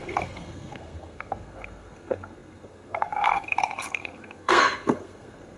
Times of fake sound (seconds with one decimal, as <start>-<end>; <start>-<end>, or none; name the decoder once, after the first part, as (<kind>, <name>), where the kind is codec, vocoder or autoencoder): 0.0-5.6 (codec, SNAC)